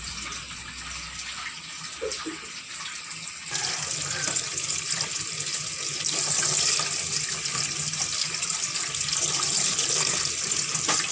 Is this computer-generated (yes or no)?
yes